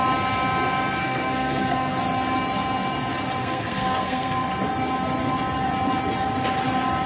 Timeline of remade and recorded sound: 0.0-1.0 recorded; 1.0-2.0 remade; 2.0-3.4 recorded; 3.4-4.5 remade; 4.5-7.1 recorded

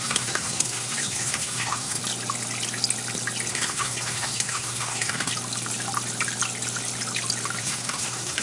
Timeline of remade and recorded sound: 0.0-2.0 remade; 2.0-3.5 recorded; 3.5-5.3 remade; 5.3-7.6 recorded; 7.6-8.4 remade

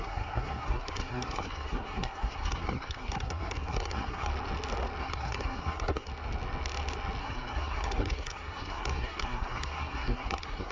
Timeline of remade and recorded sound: 0.0-4.3 remade; 4.3-5.0 recorded; 5.0-6.1 remade; 6.1-7.2 recorded; 7.2-10.7 remade

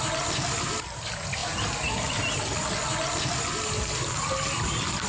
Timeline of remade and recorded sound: 0.0-5.1 recorded

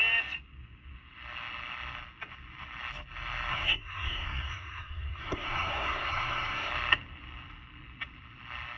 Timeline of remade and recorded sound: 0.0-3.5 recorded; 3.5-6.7 remade; 6.7-8.8 recorded

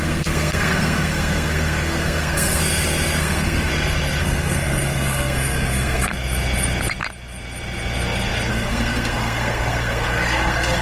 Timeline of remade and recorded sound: 0.0-2.6 remade; 2.6-3.2 recorded; 3.2-3.7 remade; 3.7-4.2 recorded; 4.2-6.1 remade; 6.1-8.5 recorded; 8.5-10.8 remade